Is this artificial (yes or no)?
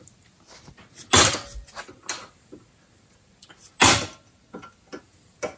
no